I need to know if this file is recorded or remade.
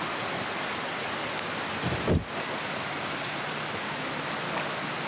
recorded